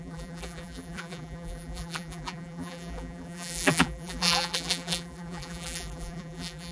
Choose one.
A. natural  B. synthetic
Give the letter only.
B